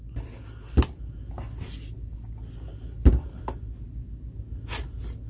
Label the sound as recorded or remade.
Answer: recorded